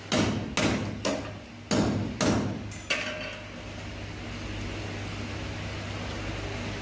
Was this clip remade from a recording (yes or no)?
no